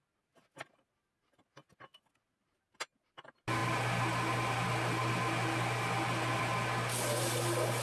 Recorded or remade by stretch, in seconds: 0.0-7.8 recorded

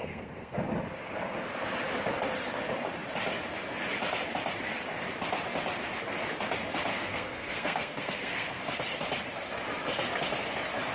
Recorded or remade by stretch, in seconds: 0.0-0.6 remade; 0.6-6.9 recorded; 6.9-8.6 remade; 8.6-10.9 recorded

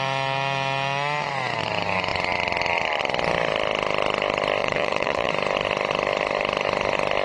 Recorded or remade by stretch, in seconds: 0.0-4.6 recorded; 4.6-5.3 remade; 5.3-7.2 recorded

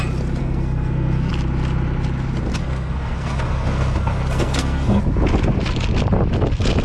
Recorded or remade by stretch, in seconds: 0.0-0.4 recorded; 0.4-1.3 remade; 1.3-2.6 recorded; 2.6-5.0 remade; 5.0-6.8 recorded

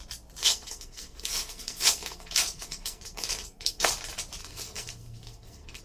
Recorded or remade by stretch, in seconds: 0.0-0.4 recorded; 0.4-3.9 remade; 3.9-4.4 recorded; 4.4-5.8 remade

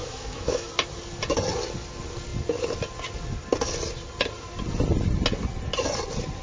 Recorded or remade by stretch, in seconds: 0.0-0.7 remade; 0.7-6.4 recorded